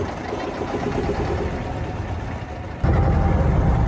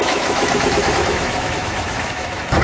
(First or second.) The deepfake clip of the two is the second